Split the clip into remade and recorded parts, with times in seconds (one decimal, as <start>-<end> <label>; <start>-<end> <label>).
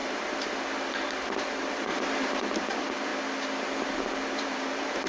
0.0-3.1 remade; 3.1-4.3 recorded; 4.3-5.1 remade